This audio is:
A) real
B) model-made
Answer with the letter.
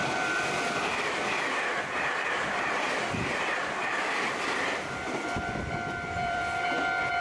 B